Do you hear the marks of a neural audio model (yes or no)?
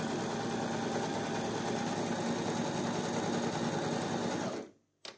no